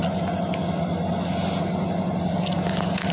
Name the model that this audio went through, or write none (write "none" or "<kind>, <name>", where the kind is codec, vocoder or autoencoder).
none